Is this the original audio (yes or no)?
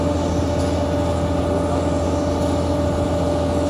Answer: yes